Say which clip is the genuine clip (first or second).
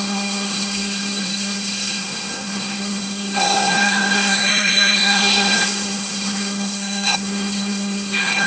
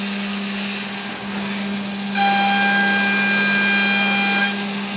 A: second